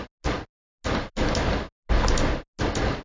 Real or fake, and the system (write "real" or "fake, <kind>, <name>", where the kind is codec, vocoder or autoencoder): real